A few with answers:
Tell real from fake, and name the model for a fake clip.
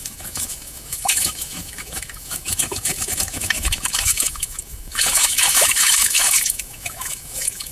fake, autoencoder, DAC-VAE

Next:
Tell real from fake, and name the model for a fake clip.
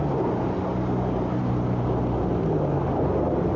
real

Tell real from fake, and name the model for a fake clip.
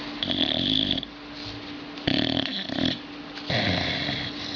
real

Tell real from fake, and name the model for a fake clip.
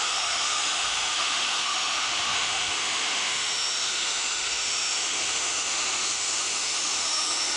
fake, autoencoder, DAC-VAE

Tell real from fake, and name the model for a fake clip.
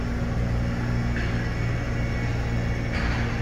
real